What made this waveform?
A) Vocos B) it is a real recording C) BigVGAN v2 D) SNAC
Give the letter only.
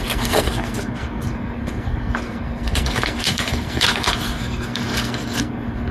D